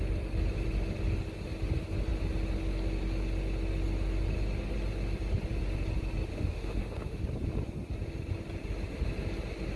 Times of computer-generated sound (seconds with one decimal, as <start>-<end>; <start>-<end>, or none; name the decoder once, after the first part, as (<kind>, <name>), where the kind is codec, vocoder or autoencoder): 6.3-7.2 (autoencoder, DAC-VAE)